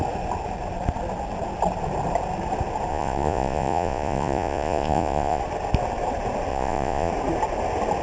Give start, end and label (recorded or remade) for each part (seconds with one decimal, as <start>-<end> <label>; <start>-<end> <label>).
0.0-2.9 recorded; 2.9-5.4 remade; 5.4-6.5 recorded; 6.5-7.1 remade; 7.1-8.0 recorded